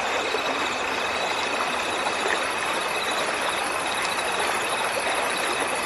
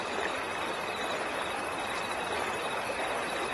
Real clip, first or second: second